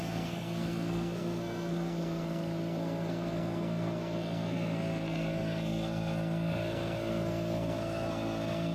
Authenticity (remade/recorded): remade